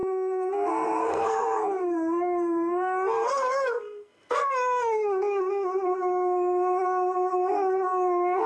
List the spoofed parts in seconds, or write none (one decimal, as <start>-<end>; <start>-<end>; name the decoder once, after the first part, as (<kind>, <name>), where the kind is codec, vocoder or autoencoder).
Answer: 0.5-8.5 (codec, SNAC)